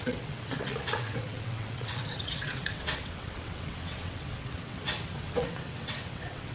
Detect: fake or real fake